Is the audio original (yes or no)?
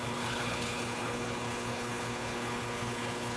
no